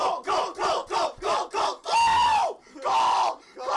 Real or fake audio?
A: real